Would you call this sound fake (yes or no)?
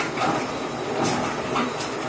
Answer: no